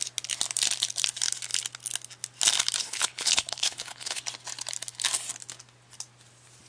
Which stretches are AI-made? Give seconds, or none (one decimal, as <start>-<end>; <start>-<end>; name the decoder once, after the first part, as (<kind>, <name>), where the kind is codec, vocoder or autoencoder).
2.8-4.2 (codec, HILCodec)